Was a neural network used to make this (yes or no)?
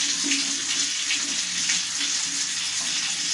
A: no